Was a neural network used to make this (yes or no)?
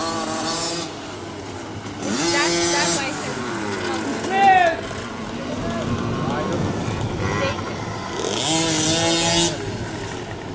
no